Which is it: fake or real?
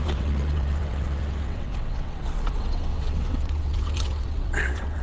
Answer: fake